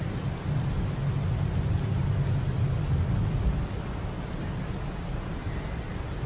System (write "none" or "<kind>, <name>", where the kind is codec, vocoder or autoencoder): none